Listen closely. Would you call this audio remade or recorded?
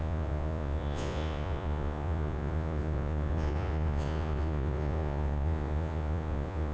remade